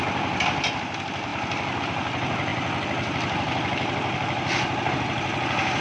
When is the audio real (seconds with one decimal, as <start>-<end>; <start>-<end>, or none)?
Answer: 0.0-5.8